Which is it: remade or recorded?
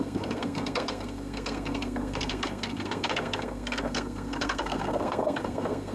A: remade